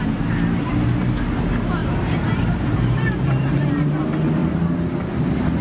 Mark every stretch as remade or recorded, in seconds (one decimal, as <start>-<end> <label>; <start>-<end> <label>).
0.0-1.8 recorded; 1.8-4.0 remade; 4.0-5.6 recorded